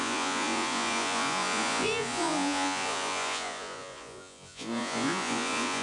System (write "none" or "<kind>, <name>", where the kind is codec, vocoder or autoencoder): vocoder, Vocos